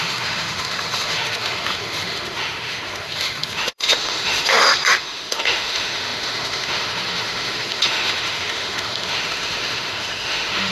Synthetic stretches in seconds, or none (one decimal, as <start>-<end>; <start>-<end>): 0.0-10.7